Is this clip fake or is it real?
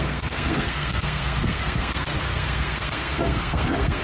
fake